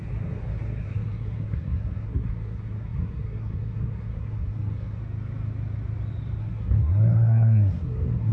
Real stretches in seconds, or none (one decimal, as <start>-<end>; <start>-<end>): 5.0-6.4